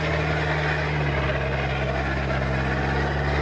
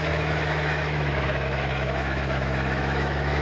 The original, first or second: first